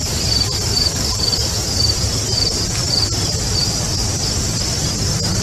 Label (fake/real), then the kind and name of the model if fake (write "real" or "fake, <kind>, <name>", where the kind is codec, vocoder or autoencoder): fake, vocoder, BigVGAN v2